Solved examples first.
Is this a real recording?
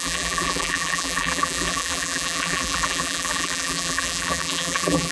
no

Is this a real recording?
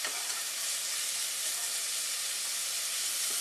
yes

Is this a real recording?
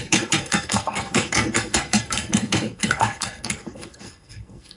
no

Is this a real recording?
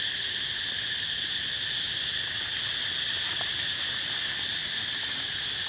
yes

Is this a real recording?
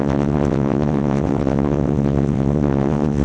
no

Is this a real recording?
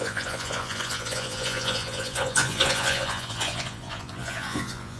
no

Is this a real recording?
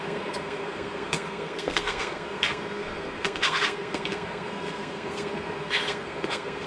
no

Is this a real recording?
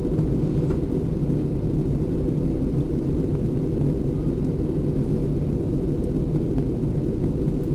yes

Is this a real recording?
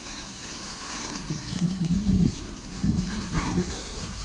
no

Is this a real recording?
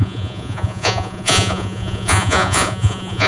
no